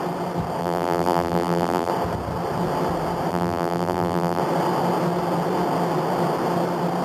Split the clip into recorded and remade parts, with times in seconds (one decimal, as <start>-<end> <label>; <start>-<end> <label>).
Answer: 0.0-0.6 recorded; 0.6-1.9 remade; 1.9-3.3 recorded; 3.3-4.4 remade; 4.4-7.0 recorded